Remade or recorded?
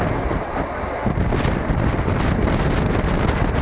recorded